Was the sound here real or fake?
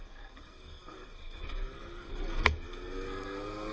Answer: fake